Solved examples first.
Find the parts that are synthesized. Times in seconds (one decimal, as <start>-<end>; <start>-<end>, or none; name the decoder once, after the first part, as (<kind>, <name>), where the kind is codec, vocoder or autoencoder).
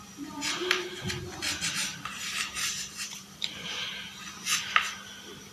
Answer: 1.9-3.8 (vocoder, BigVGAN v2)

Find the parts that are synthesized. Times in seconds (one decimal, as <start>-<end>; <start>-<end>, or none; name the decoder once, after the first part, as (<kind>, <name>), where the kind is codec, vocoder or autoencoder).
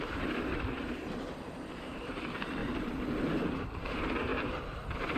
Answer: 0.0-2.6 (vocoder, BigVGAN v2); 3.2-5.2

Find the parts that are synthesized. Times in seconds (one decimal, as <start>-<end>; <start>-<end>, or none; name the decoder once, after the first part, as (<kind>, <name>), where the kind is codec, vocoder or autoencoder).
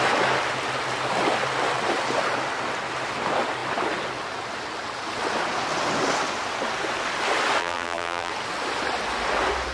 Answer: 7.6-8.3 (vocoder, BigVGAN v2)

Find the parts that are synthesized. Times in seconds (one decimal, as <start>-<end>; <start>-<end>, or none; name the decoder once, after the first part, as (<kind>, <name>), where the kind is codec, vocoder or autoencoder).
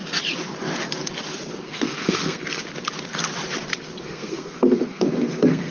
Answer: 1.6-2.6 (codec, SNAC); 4.0-5.7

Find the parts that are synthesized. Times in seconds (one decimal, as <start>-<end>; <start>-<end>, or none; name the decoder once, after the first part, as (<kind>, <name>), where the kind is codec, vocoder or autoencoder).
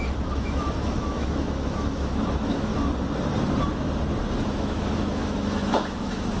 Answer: 0.0-2.7 (autoencoder, DAC-VAE); 4.4-6.4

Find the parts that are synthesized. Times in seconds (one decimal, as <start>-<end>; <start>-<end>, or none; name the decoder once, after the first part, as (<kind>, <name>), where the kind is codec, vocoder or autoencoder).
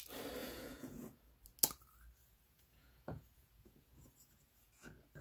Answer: 0.4-1.3 (vocoder, Vocos); 2.2-4.7